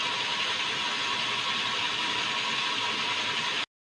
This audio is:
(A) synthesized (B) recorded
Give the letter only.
B